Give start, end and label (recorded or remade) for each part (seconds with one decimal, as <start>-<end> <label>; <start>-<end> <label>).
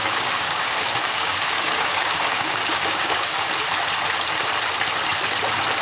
0.0-3.5 remade; 3.5-5.8 recorded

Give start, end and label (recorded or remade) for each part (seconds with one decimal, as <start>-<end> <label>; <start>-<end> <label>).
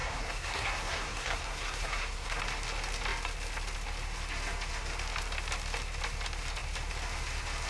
0.0-2.4 remade; 2.4-7.7 recorded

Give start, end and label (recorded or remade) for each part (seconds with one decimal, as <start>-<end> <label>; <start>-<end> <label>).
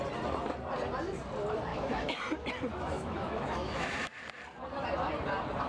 0.0-1.7 recorded; 1.7-2.2 remade; 2.2-2.7 recorded; 2.7-4.2 remade; 4.2-5.7 recorded